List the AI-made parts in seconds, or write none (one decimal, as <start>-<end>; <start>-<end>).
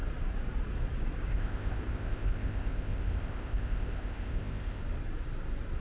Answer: 1.3-4.8